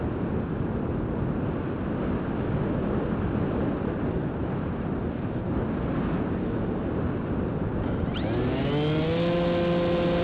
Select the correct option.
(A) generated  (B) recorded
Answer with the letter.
B